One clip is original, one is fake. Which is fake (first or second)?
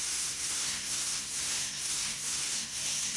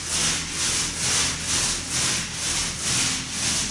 first